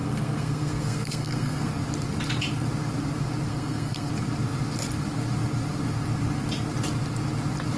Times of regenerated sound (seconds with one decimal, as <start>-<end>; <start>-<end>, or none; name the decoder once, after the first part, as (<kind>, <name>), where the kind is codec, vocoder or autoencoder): 0.0-1.7 (codec, SNAC); 3.5-4.1